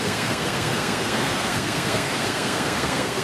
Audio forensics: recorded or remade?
remade